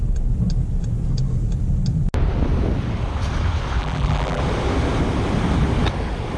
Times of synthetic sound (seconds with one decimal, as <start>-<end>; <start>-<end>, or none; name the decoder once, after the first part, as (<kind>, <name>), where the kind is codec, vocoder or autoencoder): 3.8-4.4 (vocoder, BigVGAN v2)